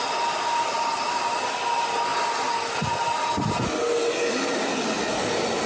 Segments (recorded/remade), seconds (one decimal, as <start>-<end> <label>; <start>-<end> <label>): 0.0-5.7 recorded